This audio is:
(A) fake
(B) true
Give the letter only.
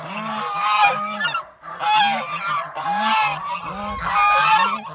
B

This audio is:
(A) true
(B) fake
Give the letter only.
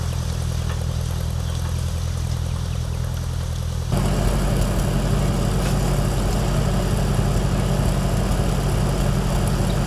A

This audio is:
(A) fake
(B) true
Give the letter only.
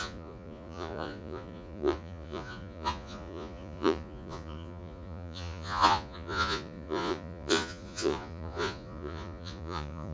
A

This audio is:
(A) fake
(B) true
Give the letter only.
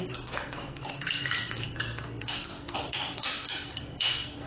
A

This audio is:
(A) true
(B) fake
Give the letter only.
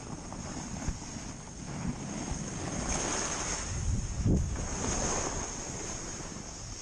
A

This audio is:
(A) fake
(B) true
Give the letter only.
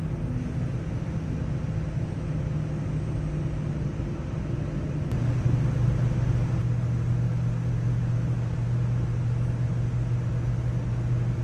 B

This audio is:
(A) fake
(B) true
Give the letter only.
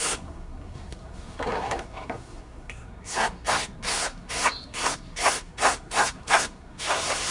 A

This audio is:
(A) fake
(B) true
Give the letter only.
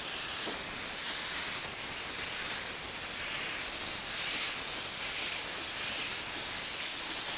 B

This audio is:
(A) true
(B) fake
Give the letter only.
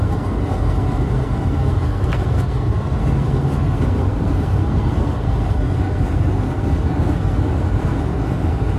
B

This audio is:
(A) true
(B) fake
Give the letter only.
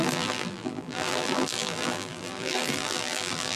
B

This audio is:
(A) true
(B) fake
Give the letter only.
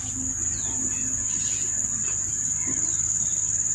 A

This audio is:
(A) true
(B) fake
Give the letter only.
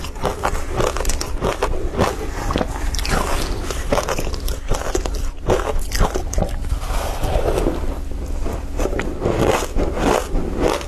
A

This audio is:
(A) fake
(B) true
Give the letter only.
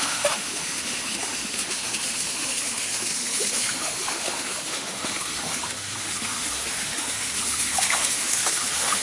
A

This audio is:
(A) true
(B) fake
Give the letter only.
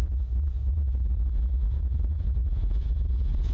B